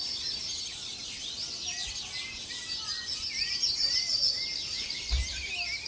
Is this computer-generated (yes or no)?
no